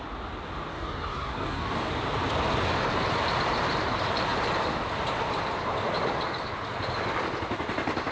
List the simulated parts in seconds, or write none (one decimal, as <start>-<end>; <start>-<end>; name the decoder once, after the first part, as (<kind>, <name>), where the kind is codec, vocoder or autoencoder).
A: 0.7-1.9 (codec, DAC)